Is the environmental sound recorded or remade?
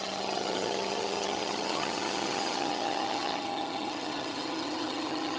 remade